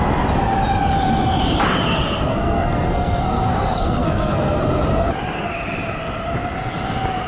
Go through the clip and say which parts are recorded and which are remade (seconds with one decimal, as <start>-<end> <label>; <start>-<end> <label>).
0.0-2.3 recorded; 2.3-4.6 remade; 4.6-7.3 recorded